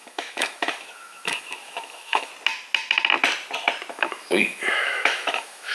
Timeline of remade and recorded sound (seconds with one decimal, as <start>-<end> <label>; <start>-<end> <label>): 0.0-2.3 remade; 2.3-3.9 recorded; 3.9-5.7 remade